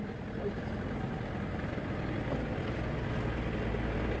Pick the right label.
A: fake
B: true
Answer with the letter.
B